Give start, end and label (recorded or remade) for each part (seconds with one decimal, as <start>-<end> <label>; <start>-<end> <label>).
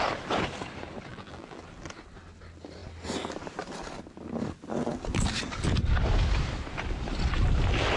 0.0-1.1 recorded; 1.1-1.6 remade; 1.6-8.0 recorded